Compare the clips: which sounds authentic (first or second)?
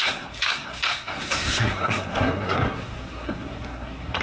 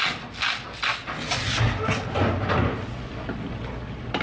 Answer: second